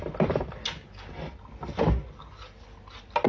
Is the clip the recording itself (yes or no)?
yes